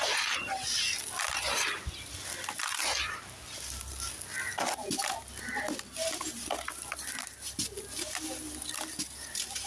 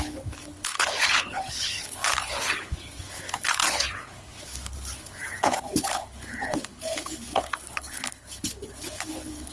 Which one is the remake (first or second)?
second